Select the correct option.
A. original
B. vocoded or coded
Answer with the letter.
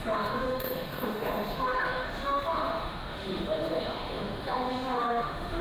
B